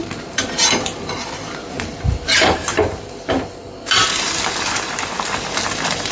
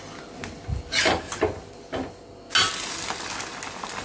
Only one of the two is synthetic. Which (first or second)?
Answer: first